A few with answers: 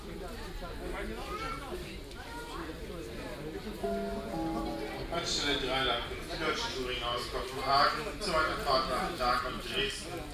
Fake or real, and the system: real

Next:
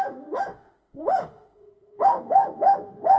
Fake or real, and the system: fake, autoencoder, DAC-VAE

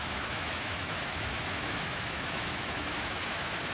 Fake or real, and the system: fake, autoencoder, DAC-VAE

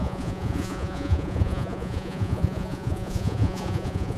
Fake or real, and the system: fake, vocoder, Vocos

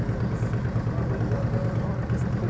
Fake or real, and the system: real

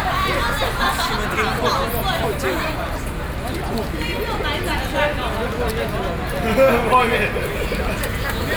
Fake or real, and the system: real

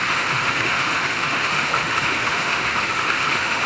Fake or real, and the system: fake, autoencoder, DAC-VAE